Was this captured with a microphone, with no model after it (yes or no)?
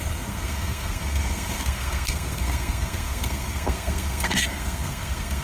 no